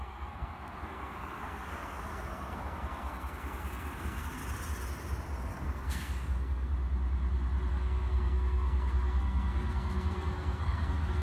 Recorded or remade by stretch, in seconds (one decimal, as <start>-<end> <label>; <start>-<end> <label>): 0.0-4.4 remade; 4.4-5.5 recorded; 5.5-6.7 remade; 6.7-7.7 recorded; 7.7-11.2 remade